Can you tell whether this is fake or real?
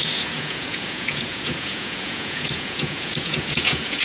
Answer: fake